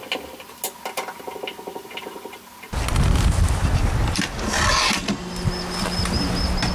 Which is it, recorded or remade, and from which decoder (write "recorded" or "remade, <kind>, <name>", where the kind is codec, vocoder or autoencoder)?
recorded